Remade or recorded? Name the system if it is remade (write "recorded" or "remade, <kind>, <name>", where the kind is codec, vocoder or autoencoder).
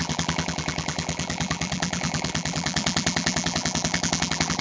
remade, vocoder, BigVGAN v2